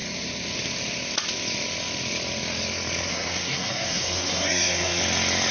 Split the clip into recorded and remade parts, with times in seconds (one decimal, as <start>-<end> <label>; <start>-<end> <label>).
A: 0.0-3.1 recorded; 3.1-5.0 remade; 5.0-5.5 recorded